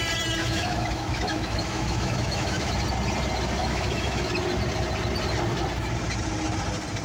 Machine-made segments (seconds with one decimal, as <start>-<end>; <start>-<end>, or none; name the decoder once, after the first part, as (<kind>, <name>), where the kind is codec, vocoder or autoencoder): 0.4-2.7 (autoencoder, DAC-VAE); 3.6-4.3